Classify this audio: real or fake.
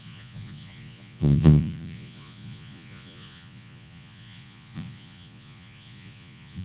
fake